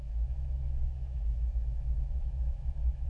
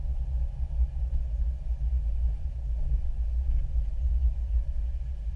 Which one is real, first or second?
second